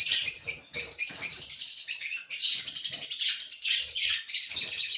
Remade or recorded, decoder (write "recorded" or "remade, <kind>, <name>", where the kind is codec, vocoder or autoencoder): remade, vocoder, BigVGAN v2